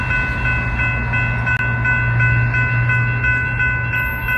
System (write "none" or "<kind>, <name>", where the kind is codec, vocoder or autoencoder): none